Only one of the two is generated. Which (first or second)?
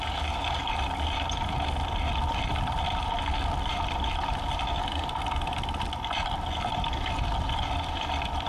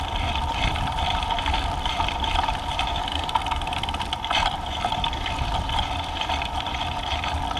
second